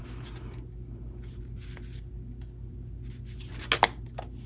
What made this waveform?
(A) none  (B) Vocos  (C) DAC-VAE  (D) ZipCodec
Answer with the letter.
A